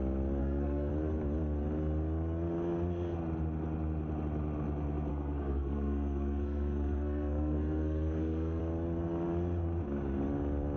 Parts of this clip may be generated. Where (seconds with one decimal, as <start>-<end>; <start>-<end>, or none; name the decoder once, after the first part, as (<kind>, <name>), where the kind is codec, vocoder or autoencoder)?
0.4-0.9 (codec, SNAC); 5.1-8.6